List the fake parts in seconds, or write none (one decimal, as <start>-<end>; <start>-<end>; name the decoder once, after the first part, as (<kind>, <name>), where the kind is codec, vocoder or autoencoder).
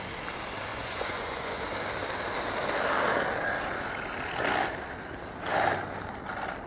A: 0.7-1.6 (vocoder, Vocos)